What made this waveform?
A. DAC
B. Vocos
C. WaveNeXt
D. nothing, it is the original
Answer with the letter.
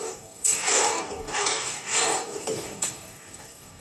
A